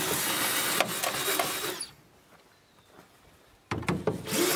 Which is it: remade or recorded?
recorded